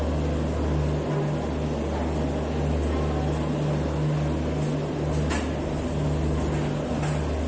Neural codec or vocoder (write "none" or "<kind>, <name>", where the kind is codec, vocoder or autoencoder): none